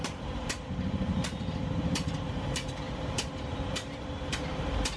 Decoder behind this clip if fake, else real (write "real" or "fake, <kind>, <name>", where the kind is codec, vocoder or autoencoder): fake, vocoder, BigVGAN v2